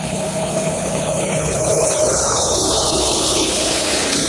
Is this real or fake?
fake